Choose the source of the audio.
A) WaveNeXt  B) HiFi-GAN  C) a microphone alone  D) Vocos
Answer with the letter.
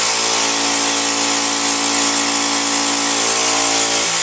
C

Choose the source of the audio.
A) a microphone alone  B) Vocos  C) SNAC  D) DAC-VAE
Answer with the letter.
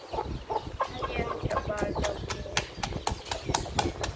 A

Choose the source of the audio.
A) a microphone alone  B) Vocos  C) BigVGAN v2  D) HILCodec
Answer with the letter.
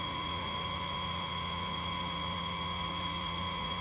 B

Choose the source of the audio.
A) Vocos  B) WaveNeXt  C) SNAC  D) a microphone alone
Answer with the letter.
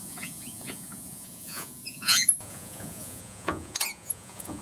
A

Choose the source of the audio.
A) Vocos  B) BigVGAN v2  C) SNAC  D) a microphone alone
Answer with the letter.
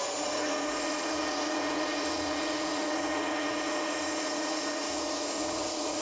A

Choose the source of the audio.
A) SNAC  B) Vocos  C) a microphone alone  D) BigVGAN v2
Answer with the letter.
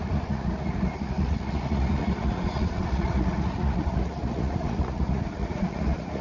B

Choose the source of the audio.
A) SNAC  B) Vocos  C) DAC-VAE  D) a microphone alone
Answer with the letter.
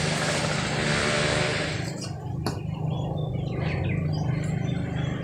D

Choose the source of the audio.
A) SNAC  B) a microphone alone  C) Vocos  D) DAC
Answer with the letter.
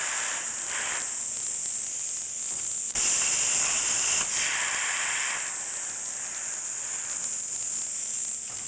B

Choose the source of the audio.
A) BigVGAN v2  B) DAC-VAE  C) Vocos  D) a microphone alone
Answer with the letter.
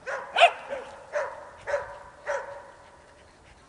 D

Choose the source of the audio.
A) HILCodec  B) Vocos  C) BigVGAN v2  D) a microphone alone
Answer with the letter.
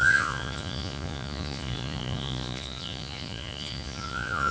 B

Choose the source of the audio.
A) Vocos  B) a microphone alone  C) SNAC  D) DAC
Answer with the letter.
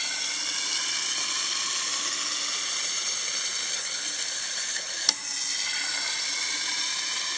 B